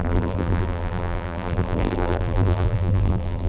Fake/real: fake